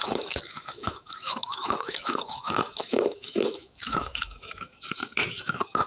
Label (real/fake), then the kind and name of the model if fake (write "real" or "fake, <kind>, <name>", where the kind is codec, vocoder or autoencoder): fake, autoencoder, DAC-VAE